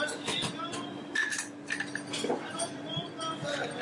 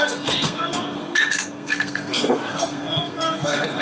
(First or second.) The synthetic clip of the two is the second